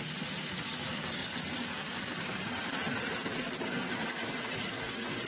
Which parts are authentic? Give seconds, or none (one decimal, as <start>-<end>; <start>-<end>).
0.0-5.3